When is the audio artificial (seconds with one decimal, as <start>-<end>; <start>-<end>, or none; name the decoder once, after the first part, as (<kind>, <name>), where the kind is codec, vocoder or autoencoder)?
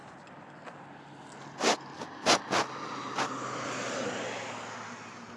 none